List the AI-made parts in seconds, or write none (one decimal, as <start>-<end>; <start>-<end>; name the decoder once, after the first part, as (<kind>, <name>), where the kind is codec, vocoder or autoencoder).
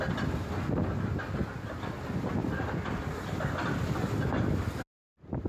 2.4-4.3 (vocoder, BigVGAN v2)